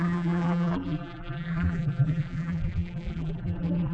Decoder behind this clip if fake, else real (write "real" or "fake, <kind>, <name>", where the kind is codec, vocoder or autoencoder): fake, vocoder, BigVGAN v2